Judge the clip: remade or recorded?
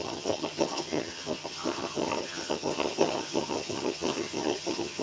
remade